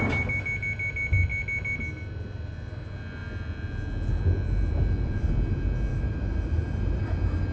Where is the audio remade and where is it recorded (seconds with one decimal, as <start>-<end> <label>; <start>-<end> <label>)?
0.0-5.9 recorded; 5.9-7.0 remade; 7.0-7.5 recorded